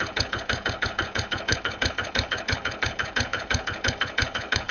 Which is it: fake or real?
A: fake